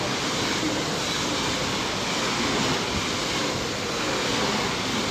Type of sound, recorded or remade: recorded